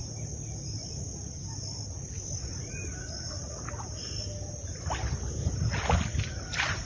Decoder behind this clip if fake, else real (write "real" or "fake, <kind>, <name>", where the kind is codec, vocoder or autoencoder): real